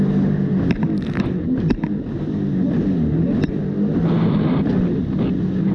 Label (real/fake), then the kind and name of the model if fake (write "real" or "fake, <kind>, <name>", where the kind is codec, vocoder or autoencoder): real